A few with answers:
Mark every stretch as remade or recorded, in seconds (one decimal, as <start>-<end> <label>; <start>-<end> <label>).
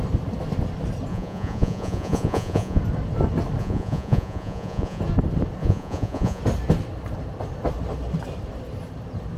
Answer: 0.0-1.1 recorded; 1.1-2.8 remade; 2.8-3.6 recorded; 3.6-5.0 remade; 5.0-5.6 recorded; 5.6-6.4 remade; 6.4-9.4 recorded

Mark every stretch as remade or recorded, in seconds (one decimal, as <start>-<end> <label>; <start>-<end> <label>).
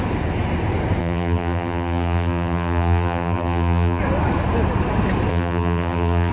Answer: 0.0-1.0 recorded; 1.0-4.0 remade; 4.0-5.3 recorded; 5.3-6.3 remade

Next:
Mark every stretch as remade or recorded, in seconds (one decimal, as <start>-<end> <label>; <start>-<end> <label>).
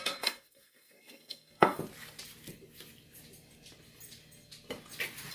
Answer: 0.0-1.8 remade; 1.8-5.3 recorded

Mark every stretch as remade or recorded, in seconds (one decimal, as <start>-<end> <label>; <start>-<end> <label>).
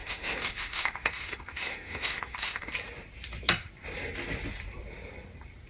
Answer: 0.0-2.7 remade; 2.7-5.7 recorded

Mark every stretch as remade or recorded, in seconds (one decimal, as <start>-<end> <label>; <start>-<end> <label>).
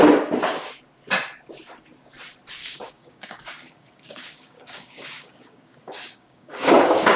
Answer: 0.0-2.6 recorded; 2.6-7.2 remade